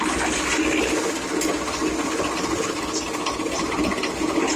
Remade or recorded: recorded